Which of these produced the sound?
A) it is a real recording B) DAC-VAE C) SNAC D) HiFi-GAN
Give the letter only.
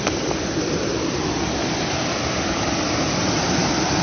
A